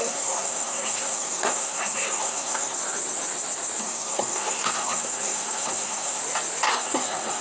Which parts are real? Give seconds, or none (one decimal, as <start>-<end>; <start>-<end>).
2.8-3.8; 6.2-6.7